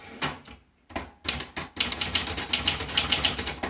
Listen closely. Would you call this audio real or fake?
real